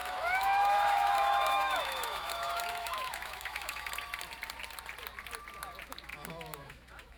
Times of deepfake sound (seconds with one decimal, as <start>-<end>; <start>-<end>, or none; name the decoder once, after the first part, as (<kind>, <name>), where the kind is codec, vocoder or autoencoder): 0.0-3.9 (autoencoder, DAC-VAE); 6.1-7.2